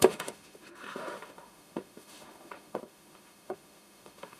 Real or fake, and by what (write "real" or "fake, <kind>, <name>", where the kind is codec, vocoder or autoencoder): fake, autoencoder, DAC-VAE